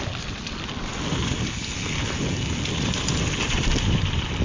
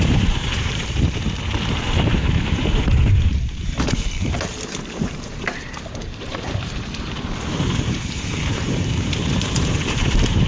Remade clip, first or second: second